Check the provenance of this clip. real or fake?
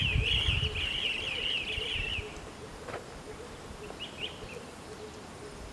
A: real